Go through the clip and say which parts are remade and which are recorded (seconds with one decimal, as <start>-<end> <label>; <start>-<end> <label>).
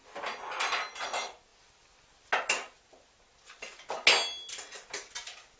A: 0.0-5.6 recorded